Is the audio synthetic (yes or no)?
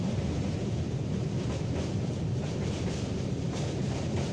no